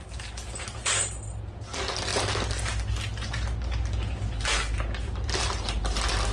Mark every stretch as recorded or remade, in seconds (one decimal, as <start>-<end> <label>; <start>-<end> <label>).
0.0-6.3 recorded